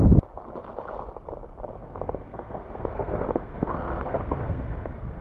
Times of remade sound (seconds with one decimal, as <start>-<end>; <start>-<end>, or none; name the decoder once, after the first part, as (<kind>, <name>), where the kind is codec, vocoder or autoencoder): 1.8-5.2 (codec, SNAC)